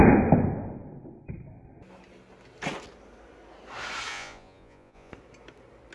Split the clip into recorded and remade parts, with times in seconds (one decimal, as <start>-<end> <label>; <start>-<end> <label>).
0.0-4.1 recorded; 4.1-5.1 remade; 5.1-5.9 recorded

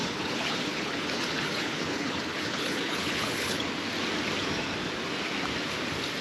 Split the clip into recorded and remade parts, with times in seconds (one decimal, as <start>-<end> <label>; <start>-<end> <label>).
0.0-3.7 remade; 3.7-6.2 recorded

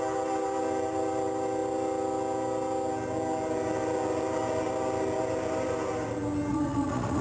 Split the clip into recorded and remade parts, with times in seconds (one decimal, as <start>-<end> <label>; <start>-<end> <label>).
0.0-6.5 recorded; 6.5-7.2 remade

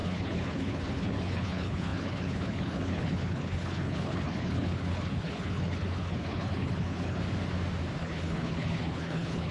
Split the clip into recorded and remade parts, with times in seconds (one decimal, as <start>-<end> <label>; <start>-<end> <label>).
0.0-7.2 remade; 7.2-8.0 recorded; 8.0-9.5 remade

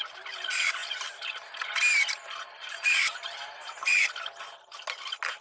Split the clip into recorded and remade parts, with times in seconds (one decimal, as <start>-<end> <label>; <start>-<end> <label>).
0.0-5.4 recorded

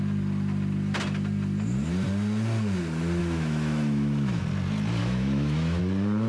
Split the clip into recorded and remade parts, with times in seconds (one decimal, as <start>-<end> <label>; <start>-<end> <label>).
0.0-3.2 recorded; 3.2-4.4 remade; 4.4-5.0 recorded; 5.0-5.8 remade; 5.8-6.3 recorded